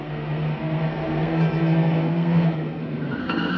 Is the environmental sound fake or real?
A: fake